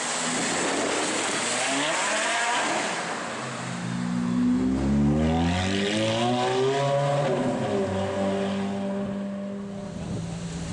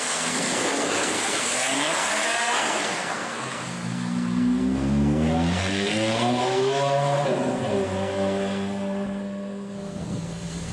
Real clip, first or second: first